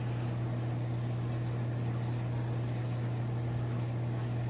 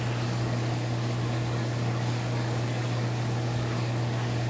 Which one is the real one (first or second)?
first